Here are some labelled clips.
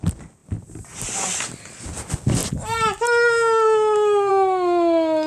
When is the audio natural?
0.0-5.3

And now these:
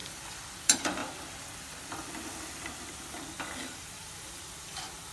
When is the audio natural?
0.0-0.6; 1.0-3.6

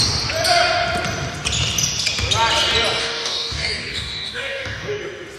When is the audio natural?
0.0-3.0; 5.0-5.4

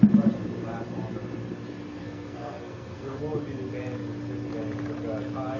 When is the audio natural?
0.0-2.0; 3.2-5.6

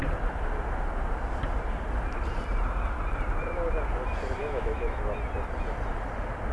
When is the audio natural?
0.0-4.4; 5.0-6.5

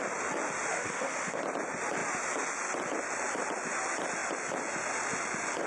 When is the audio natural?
0.0-0.7; 1.4-5.7